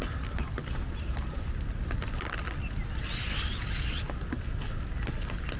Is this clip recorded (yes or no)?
yes